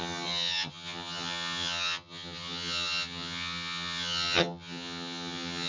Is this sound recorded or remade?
remade